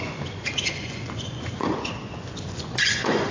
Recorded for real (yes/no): no